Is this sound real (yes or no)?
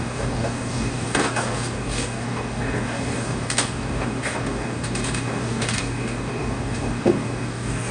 no